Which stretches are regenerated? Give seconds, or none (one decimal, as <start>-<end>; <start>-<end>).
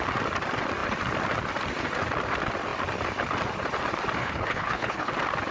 4.2-5.1